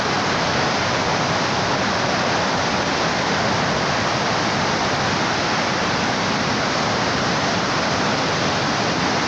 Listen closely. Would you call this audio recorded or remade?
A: recorded